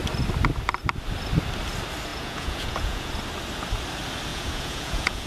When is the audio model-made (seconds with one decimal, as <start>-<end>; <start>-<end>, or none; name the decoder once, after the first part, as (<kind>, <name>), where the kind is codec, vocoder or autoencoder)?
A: 2.1-3.1 (vocoder, Vocos); 4.3-5.3